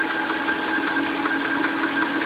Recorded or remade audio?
recorded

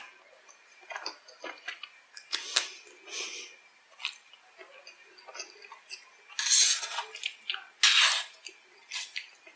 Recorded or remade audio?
recorded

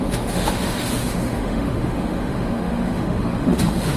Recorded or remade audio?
remade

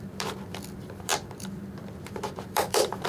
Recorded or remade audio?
remade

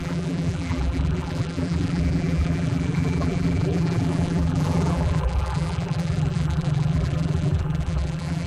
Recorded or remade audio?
remade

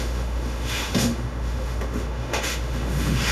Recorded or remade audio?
remade